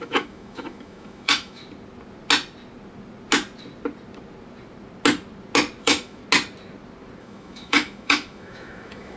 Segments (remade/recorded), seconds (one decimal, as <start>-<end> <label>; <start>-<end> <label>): 0.0-1.6 remade; 1.6-5.8 recorded; 5.8-6.2 remade; 6.2-7.2 recorded; 7.2-9.2 remade